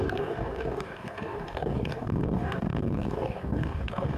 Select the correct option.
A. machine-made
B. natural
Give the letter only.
A